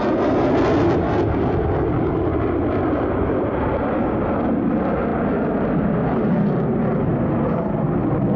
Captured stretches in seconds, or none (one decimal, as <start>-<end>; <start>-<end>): 0.0-8.4